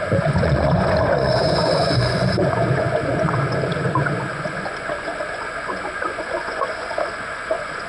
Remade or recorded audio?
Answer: remade